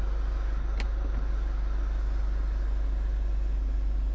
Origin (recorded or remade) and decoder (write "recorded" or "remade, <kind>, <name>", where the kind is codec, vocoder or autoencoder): recorded